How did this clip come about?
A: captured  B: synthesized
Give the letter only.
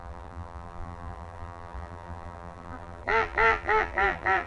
B